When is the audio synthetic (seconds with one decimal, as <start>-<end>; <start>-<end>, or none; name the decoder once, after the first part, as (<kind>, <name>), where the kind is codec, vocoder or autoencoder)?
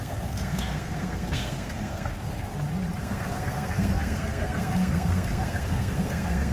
0.0-2.5 (codec, SNAC); 3.0-6.5